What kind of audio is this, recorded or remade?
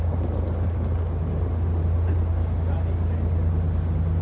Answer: recorded